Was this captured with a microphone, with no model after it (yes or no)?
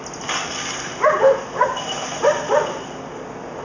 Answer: yes